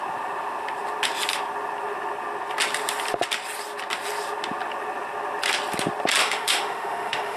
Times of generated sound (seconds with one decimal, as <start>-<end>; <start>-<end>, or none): 6.2-7.4